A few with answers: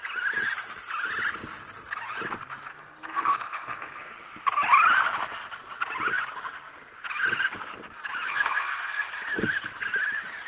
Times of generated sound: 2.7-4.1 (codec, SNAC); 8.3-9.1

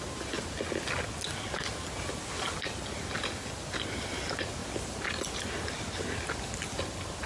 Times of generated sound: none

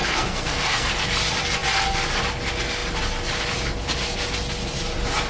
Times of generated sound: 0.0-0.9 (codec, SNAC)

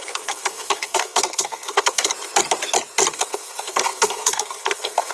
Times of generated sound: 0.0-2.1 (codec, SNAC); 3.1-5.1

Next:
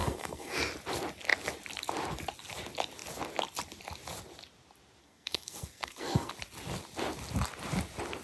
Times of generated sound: 0.0-0.6 (codec, SNAC); 5.0-6.3

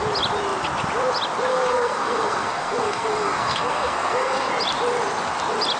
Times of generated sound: 1.5-4.5 (codec, SNAC)

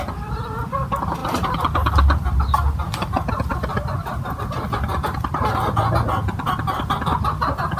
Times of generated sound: none

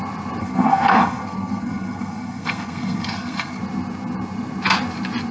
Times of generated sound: 0.4-3.6 (codec, SNAC)